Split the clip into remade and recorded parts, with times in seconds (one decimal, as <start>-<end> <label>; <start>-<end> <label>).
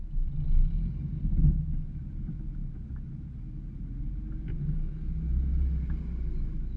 0.0-6.8 recorded